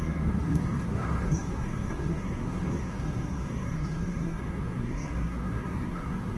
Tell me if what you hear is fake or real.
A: fake